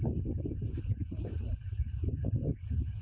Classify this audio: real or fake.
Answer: real